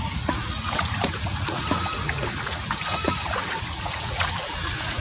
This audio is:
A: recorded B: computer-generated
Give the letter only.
B